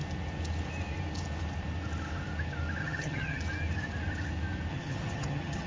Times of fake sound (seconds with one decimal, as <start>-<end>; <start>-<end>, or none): 2.8-3.4; 4.7-5.7